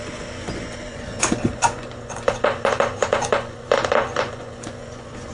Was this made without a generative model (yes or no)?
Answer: no